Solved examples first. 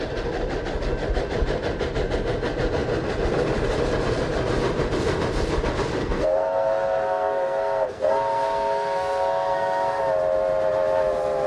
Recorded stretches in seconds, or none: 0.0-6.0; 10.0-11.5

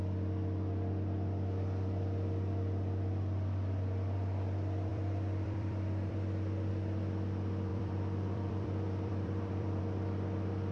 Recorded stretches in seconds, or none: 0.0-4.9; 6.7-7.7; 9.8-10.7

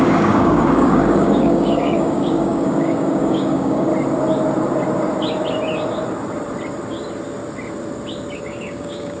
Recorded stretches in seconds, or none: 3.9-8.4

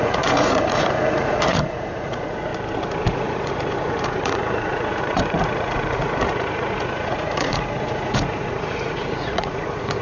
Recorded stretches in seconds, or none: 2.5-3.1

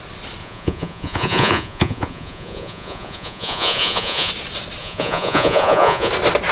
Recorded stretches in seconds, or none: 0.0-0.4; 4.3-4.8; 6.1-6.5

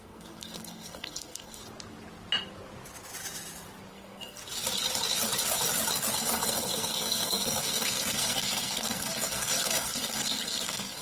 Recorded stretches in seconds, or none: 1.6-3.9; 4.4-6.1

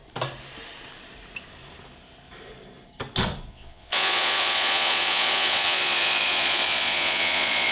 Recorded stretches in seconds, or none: 0.0-3.5

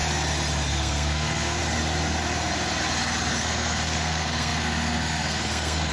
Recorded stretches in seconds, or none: 0.0-0.7; 1.6-3.3